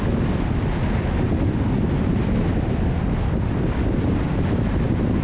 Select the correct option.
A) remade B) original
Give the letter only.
B